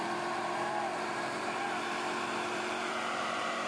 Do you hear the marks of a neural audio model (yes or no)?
yes